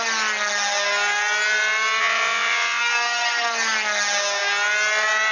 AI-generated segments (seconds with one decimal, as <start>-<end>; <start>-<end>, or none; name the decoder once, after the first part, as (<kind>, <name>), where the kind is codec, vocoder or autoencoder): 2.0-2.8 (vocoder, WaveNeXt)